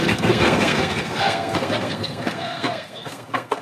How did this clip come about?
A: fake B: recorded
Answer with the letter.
A